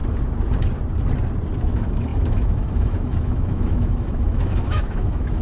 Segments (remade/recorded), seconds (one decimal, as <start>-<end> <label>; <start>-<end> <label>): 0.0-1.6 recorded; 1.6-5.4 remade